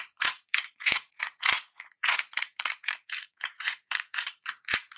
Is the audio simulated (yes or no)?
yes